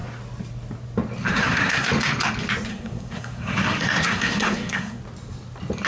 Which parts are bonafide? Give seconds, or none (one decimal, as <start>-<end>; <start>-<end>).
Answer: 0.0-1.3; 1.9-2.7; 5.0-5.9